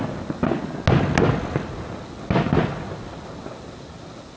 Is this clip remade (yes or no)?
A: no